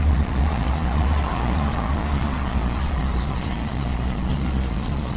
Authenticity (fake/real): fake